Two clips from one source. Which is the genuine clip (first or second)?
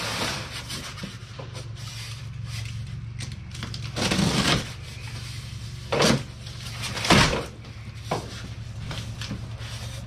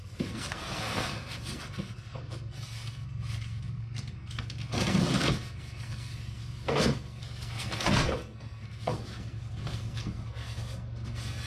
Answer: first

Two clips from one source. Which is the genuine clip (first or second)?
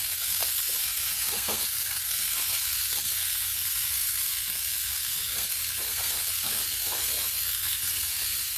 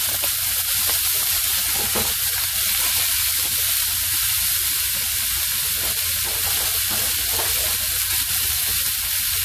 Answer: second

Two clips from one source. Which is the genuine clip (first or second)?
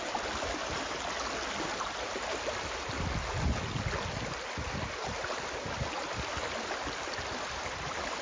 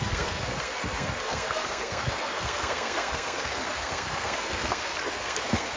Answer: first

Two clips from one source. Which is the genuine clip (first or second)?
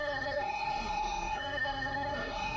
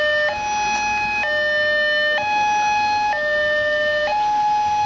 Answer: second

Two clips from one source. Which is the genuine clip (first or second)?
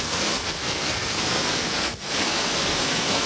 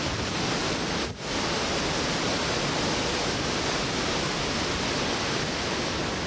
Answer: second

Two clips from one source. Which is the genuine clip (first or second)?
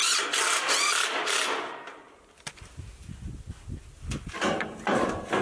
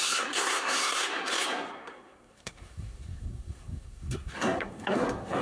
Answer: first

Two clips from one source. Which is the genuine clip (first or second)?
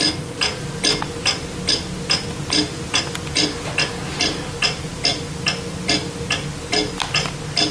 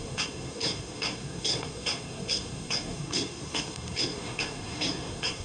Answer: first